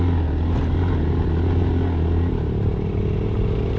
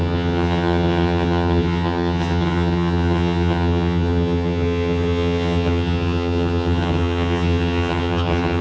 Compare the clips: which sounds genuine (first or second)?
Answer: first